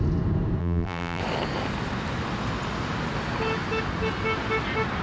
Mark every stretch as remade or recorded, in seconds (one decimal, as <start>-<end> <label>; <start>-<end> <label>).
0.0-0.6 recorded; 0.6-1.2 remade; 1.2-5.0 recorded

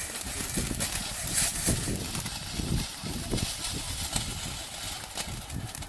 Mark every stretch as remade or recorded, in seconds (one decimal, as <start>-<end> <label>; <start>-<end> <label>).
0.0-5.9 recorded

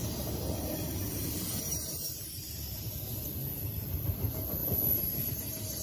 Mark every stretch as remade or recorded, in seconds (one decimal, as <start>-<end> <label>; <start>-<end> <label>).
0.0-0.6 recorded; 0.6-4.1 remade; 4.1-4.6 recorded; 4.6-5.3 remade; 5.3-5.8 recorded

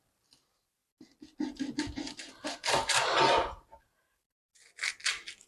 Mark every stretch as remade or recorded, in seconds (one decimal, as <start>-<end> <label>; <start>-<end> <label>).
0.0-0.8 remade; 0.8-3.8 recorded; 3.8-4.5 remade; 4.5-5.5 recorded

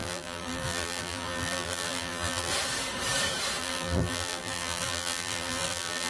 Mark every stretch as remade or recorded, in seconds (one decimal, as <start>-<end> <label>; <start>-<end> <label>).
0.0-2.5 remade; 2.5-3.6 recorded; 3.6-6.1 remade

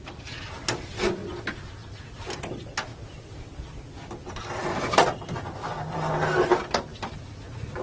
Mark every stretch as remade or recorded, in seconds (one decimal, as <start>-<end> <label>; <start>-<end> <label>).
0.0-6.9 recorded; 6.9-7.8 remade

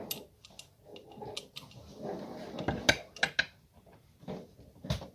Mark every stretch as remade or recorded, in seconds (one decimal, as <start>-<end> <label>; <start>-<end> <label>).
0.0-5.1 recorded

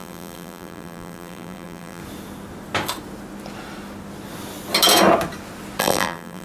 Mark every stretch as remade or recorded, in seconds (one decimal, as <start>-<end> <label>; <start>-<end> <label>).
0.0-2.0 remade; 2.0-5.8 recorded; 5.8-6.4 remade